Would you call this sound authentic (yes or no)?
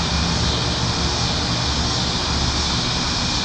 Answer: yes